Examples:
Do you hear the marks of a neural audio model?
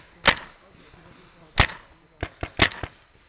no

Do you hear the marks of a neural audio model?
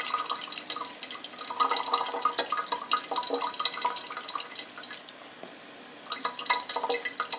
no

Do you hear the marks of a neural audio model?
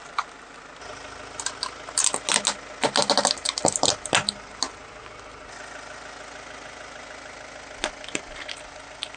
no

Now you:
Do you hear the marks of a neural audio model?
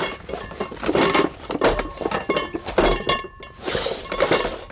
no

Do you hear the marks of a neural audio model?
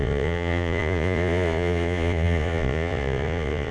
yes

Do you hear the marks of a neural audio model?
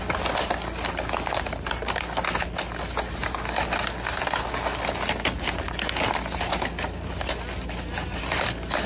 no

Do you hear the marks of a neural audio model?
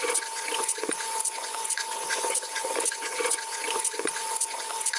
yes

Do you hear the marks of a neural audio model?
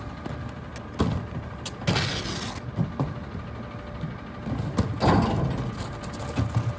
no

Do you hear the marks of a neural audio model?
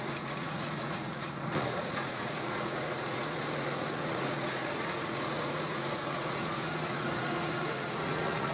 yes